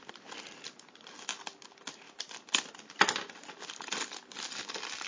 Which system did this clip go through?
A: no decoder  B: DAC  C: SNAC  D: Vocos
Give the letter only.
A